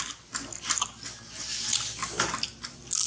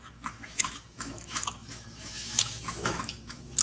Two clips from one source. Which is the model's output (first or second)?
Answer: second